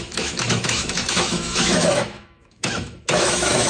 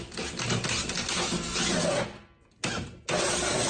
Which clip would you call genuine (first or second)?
second